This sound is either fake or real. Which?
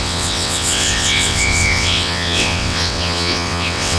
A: fake